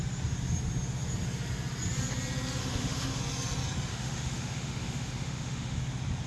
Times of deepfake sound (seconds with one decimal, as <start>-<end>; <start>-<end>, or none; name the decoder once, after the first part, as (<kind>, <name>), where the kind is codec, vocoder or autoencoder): 2.6-3.2 (autoencoder, DAC-VAE); 3.9-5.8

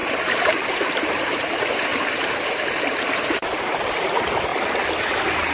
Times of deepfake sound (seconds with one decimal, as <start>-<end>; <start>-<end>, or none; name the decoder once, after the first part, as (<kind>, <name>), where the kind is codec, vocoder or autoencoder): 0.0-1.9 (vocoder, BigVGAN v2); 2.4-4.5; 5.0-5.5

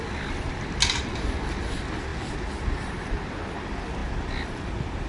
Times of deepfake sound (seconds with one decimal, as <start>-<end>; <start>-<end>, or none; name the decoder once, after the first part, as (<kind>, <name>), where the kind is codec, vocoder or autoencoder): none